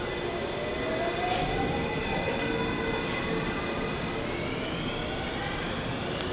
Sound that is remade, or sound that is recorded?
recorded